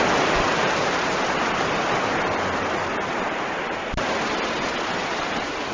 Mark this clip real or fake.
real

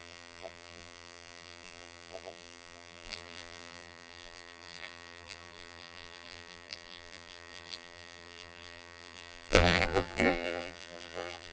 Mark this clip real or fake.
fake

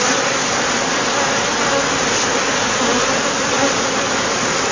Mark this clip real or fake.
real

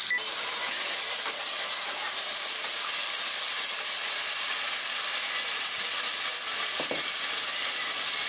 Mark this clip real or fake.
real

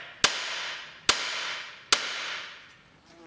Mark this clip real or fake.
real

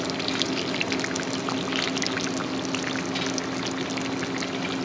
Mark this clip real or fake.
real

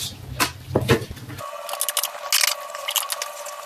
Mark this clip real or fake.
real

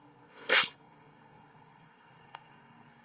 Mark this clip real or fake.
fake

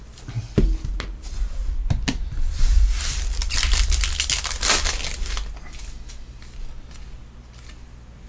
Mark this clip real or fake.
real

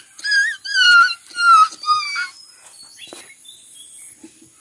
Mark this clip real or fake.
fake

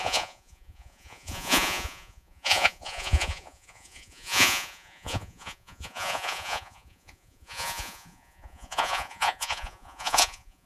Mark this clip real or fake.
fake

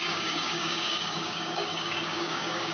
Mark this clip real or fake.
fake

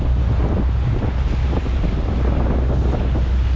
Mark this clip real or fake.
real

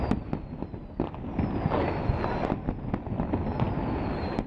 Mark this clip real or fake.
real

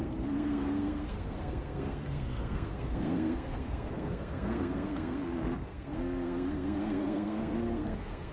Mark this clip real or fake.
fake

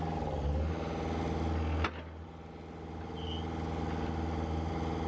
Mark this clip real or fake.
real